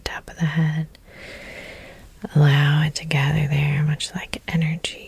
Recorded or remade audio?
remade